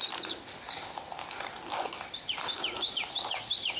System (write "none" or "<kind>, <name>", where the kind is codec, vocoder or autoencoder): none